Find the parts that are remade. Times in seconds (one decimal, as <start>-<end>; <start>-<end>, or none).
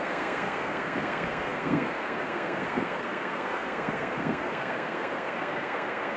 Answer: 0.0-6.2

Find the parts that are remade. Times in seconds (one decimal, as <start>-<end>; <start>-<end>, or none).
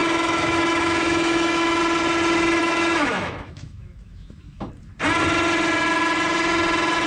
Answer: 0.0-1.8; 2.6-4.7